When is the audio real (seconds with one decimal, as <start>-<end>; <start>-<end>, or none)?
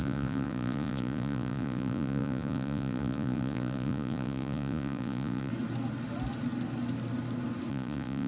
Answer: 5.5-7.7